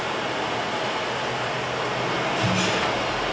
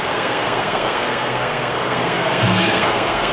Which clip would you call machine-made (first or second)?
second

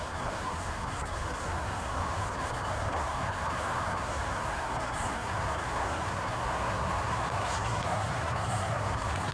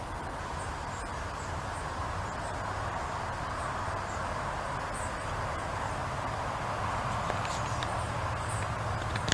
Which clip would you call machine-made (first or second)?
first